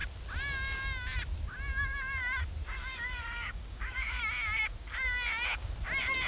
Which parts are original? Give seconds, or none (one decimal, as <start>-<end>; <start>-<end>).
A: 0.0-2.7; 4.2-6.3